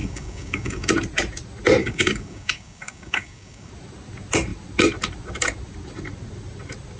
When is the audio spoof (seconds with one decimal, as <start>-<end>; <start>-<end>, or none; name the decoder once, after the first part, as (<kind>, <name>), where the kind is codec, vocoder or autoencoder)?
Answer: 0.0-0.9 (codec, DAC); 1.8-3.7